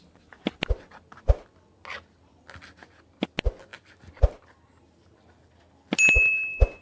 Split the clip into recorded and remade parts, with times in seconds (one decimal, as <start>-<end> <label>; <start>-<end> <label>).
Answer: 0.0-6.8 recorded